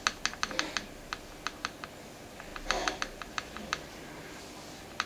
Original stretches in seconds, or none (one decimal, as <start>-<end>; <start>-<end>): 0.0-5.1